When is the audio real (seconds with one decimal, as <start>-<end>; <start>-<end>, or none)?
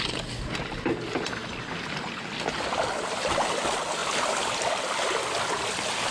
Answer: 0.0-4.0